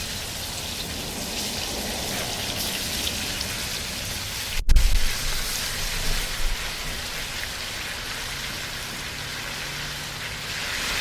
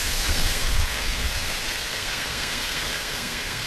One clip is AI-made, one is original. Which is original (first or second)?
first